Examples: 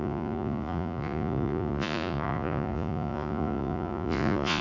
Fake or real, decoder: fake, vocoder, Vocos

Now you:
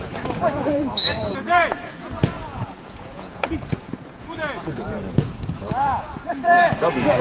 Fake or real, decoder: fake, vocoder, Vocos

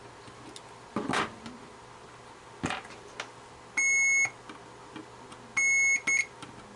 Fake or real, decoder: real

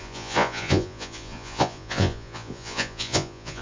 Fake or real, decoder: fake, vocoder, Vocos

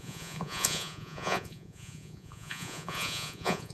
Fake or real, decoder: fake, vocoder, Vocos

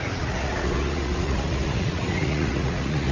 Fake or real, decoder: fake, vocoder, Vocos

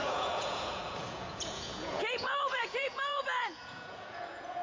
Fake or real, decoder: fake, vocoder, Vocos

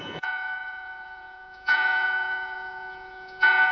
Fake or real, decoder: fake, vocoder, Vocos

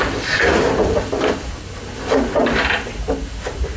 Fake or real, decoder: real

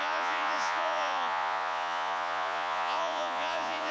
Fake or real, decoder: fake, vocoder, Vocos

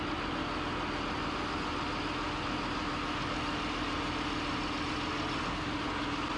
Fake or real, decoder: real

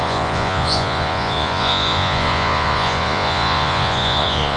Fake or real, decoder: fake, vocoder, Vocos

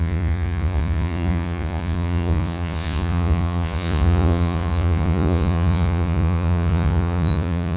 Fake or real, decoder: fake, vocoder, Vocos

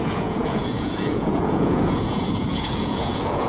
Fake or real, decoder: fake, vocoder, Vocos